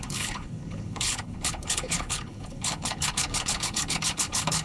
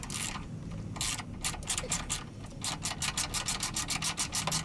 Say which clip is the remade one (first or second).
first